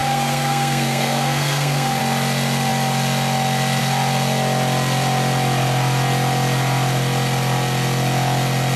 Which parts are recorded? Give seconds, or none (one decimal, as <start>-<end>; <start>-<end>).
2.0-8.8